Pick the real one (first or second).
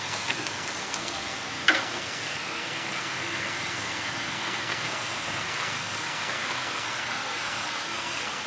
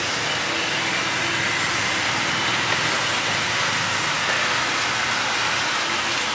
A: second